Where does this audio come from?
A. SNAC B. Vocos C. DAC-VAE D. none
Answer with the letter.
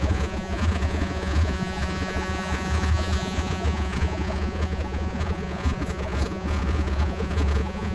B